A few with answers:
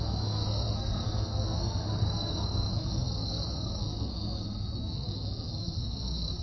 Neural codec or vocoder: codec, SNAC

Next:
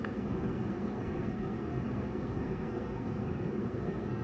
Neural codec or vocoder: codec, SNAC